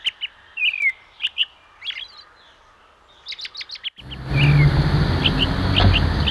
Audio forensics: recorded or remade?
recorded